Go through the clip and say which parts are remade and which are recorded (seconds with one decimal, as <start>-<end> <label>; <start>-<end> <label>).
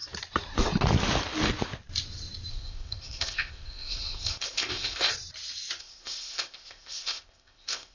0.0-2.5 recorded; 2.5-5.1 remade; 5.1-5.8 recorded; 5.8-7.9 remade